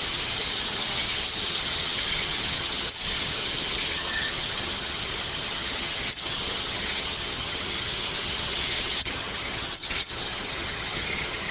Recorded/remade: remade